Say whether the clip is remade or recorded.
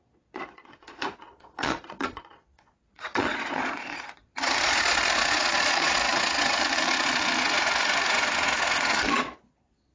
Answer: remade